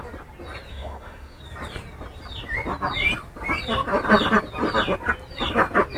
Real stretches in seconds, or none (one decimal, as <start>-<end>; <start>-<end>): 0.0-0.7; 1.4-6.0